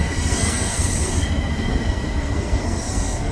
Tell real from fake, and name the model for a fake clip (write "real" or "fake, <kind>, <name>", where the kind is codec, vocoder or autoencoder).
fake, codec, SNAC